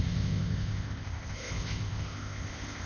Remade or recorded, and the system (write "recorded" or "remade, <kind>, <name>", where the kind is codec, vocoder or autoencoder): remade, codec, ZipCodec